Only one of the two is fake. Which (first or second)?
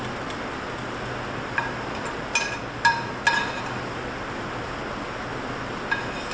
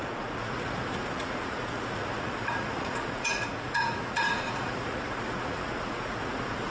second